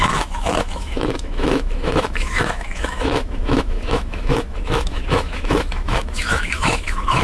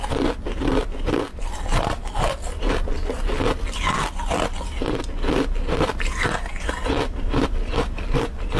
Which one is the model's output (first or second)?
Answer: first